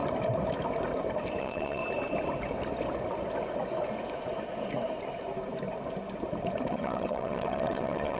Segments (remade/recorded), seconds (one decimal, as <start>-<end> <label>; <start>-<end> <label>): 0.0-1.4 recorded; 1.4-1.8 remade; 1.8-6.7 recorded; 6.7-8.2 remade